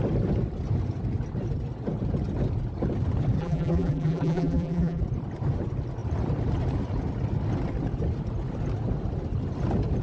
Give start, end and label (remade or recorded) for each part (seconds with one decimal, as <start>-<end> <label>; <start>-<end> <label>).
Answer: 0.0-3.4 recorded; 3.4-5.0 remade; 5.0-10.0 recorded

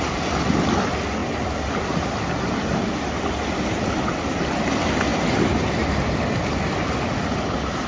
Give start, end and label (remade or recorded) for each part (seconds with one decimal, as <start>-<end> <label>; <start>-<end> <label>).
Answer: 0.0-7.9 recorded

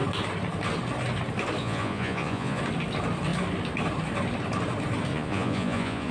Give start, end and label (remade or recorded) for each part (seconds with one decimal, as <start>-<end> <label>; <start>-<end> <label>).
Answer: 0.0-1.6 recorded; 1.6-2.6 remade; 2.6-5.1 recorded; 5.1-6.1 remade

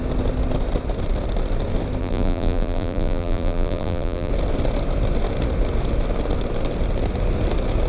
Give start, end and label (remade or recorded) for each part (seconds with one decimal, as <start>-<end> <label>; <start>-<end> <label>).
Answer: 0.0-2.0 recorded; 2.0-4.3 remade; 4.3-7.9 recorded